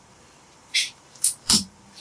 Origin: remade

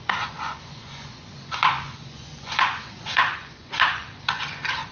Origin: remade